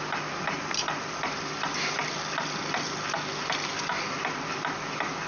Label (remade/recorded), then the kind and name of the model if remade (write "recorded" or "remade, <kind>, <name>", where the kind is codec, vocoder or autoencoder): remade, vocoder, BigVGAN v2